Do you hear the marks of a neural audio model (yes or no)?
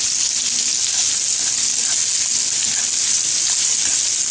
no